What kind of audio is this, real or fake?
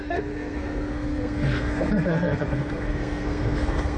fake